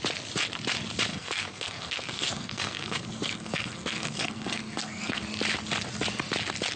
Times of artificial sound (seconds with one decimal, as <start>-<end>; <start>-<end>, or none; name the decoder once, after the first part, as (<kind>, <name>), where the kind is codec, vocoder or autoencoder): 1.1-5.2 (codec, SNAC)